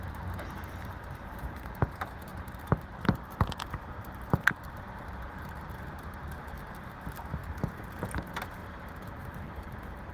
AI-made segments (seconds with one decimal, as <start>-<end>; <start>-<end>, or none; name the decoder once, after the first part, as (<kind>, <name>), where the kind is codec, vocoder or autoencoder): 0.0-7.4 (vocoder, BigVGAN v2); 8.0-10.1